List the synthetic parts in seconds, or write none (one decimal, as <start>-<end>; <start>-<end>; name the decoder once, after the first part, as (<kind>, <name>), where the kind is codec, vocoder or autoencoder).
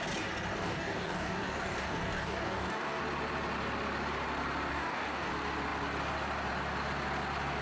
0.5-3.0 (codec, DAC); 4.7-5.3